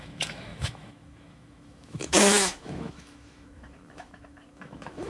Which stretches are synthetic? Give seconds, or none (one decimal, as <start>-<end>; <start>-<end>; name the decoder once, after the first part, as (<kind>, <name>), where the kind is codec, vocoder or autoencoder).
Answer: 0.0-5.1 (autoencoder, DAC-VAE)